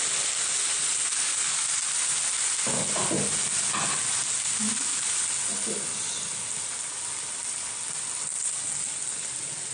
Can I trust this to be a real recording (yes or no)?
yes